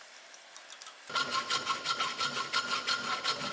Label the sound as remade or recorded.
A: recorded